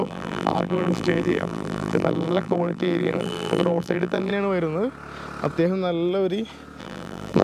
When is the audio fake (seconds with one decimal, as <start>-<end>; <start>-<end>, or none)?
0.0-4.3; 6.8-7.4